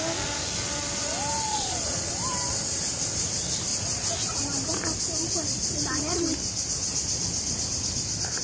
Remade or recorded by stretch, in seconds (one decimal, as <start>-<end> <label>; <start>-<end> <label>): 0.0-1.5 recorded; 1.5-2.1 remade; 2.1-8.4 recorded